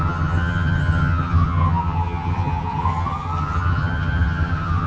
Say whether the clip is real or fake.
fake